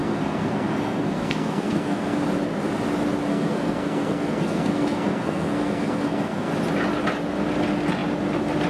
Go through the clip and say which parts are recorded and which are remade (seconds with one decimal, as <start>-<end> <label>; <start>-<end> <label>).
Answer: 0.0-2.2 remade; 2.2-3.3 recorded; 3.3-6.5 remade; 6.5-8.7 recorded